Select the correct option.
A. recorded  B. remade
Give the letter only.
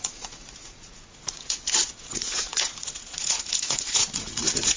B